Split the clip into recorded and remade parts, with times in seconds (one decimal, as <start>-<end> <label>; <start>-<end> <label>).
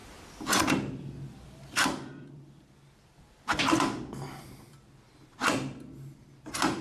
0.0-0.6 remade; 0.6-1.3 recorded; 1.3-4.9 remade; 4.9-6.8 recorded